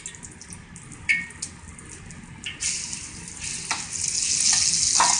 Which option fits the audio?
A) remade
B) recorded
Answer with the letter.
B